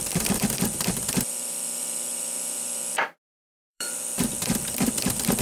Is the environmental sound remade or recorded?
remade